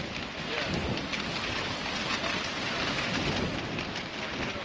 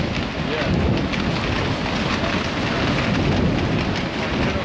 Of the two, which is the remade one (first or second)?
first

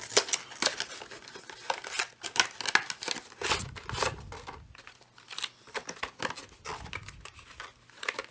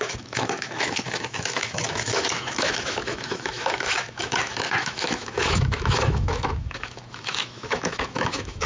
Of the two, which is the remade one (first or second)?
second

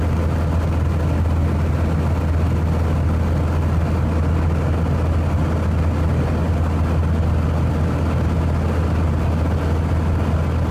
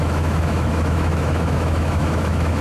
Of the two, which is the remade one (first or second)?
second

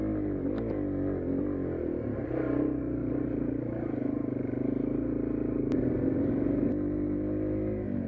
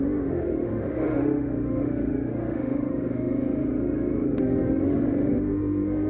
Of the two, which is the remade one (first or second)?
second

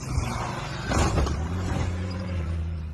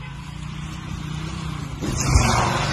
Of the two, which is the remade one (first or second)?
first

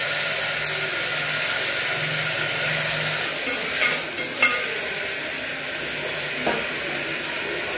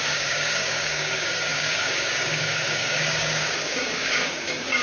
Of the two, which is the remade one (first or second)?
second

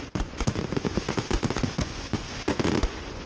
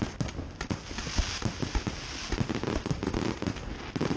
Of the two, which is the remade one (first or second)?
first